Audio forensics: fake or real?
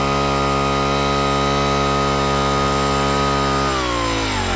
real